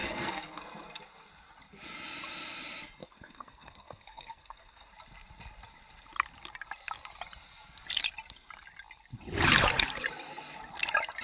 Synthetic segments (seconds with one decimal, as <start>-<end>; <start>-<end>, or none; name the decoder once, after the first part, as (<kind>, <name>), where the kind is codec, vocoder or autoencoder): 0.0-1.0 (codec, SNAC); 3.0-4.9